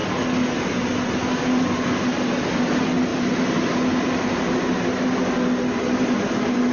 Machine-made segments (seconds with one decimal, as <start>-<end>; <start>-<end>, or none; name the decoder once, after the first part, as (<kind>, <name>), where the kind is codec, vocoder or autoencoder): 3.1-3.8 (vocoder, BigVGAN v2)